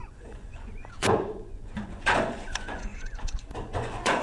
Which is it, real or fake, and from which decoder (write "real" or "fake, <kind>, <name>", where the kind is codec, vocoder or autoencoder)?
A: fake, vocoder, Vocos